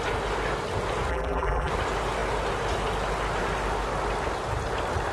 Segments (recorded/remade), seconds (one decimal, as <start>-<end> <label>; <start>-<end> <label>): 0.0-1.1 recorded; 1.1-1.7 remade; 1.7-5.1 recorded